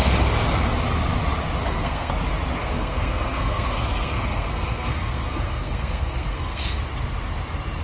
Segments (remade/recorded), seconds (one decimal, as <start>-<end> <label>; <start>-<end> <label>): 0.0-1.6 recorded; 1.6-2.1 remade; 2.1-2.6 recorded; 2.6-6.8 remade; 6.8-7.8 recorded